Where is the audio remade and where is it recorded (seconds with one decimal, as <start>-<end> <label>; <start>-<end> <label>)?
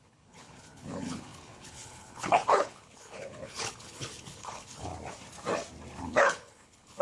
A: 0.0-4.9 remade; 4.9-6.0 recorded; 6.0-7.0 remade